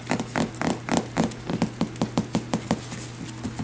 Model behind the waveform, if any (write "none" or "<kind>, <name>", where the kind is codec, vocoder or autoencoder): none